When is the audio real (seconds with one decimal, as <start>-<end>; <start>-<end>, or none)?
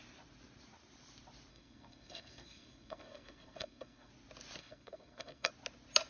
0.0-1.5; 4.1-4.6; 5.5-6.1